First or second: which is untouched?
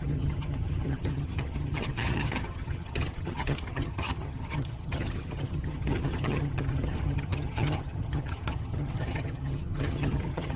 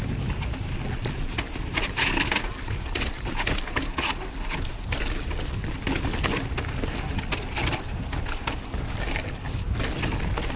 second